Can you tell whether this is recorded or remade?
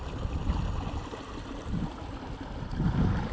recorded